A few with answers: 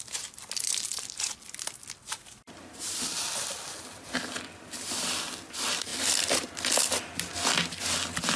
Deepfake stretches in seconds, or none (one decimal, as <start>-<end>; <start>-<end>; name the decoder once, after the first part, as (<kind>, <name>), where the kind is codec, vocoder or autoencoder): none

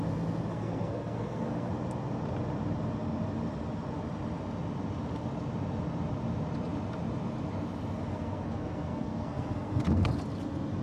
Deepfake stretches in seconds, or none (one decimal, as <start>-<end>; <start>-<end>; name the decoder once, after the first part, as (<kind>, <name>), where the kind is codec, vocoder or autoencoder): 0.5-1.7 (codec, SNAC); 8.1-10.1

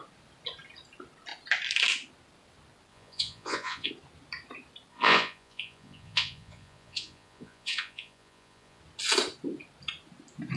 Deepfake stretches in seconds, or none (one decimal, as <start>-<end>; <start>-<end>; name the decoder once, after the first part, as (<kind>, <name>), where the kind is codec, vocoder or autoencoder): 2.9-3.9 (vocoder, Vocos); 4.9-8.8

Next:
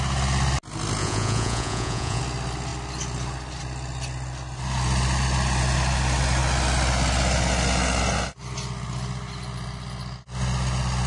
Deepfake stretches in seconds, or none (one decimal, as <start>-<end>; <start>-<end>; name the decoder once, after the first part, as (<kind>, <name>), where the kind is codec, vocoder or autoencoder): 1.0-2.2 (vocoder, Vocos)

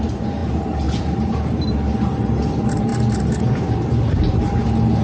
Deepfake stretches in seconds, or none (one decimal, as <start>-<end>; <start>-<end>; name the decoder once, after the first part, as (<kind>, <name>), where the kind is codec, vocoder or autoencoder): none